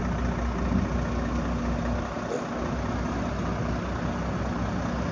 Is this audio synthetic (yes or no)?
no